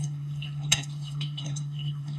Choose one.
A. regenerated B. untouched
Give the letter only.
A